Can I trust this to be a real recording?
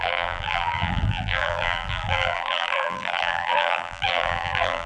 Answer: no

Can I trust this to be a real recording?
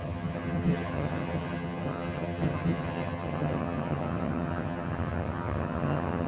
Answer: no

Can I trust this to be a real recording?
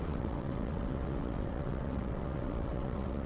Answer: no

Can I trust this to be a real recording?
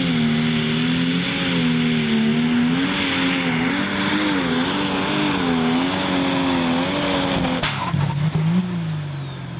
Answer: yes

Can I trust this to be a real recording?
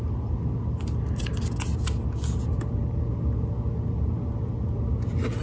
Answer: yes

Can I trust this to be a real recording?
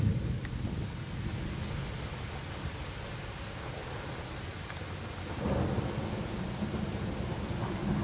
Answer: yes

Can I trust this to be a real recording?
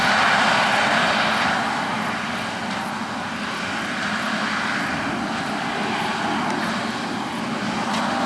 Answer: yes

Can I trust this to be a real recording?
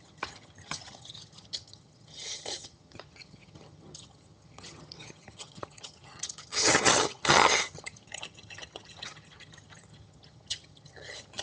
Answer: no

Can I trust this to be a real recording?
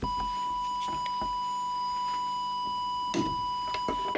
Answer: yes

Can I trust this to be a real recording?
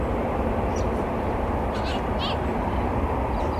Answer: yes